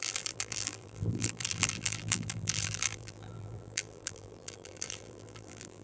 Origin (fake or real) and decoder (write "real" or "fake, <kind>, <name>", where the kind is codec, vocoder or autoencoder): fake, vocoder, BigVGAN v2